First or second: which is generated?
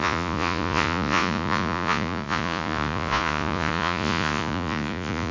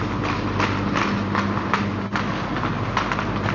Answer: first